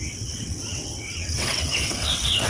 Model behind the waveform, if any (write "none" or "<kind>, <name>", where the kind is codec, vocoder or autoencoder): vocoder, WaveNeXt